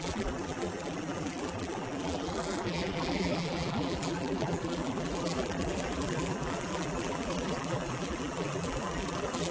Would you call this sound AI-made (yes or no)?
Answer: yes